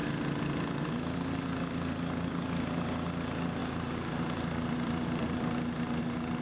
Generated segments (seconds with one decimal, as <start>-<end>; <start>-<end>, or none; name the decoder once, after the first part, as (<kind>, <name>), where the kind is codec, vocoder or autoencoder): 3.6-6.0 (vocoder, BigVGAN v2)